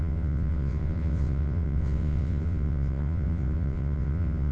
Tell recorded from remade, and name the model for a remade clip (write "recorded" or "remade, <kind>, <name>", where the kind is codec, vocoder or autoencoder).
remade, vocoder, WaveNeXt